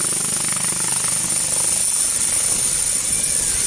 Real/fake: real